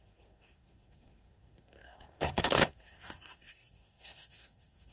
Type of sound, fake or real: fake